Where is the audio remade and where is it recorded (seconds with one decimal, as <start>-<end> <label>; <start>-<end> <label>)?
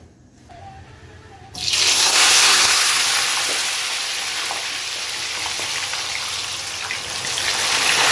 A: 0.0-1.9 recorded; 1.9-3.0 remade; 3.0-8.1 recorded